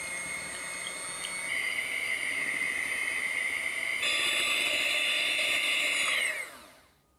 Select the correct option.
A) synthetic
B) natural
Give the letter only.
B